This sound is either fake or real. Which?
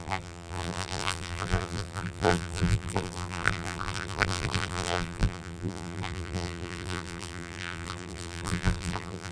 fake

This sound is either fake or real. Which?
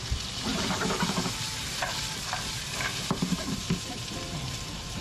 fake